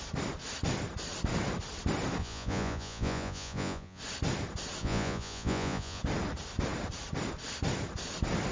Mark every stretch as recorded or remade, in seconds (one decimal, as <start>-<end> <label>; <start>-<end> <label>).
0.0-2.2 recorded; 2.2-4.0 remade; 4.0-4.8 recorded; 4.8-6.0 remade; 6.0-8.5 recorded